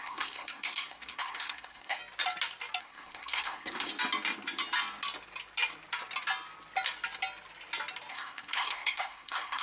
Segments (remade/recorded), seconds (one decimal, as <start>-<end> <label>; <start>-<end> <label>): 0.0-2.0 remade; 2.0-2.8 recorded; 2.8-3.9 remade; 3.9-8.1 recorded; 8.1-9.6 remade